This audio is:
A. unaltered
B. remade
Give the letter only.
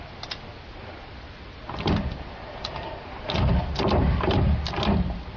A